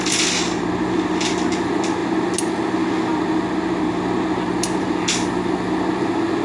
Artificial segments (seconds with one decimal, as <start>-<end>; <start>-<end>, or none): none